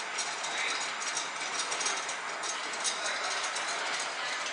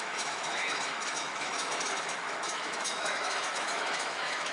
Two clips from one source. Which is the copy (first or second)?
second